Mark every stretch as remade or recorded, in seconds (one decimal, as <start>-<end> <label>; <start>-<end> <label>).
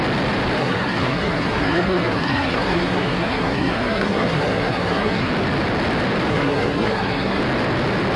0.0-0.6 recorded; 0.6-5.3 remade; 5.3-6.3 recorded; 6.3-7.4 remade; 7.4-8.2 recorded